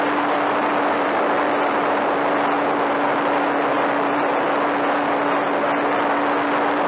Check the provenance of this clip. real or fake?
real